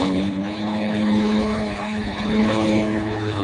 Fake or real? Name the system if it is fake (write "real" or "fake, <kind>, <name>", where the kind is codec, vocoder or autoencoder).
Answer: fake, codec, HILCodec